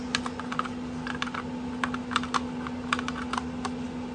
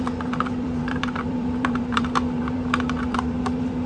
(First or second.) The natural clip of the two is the first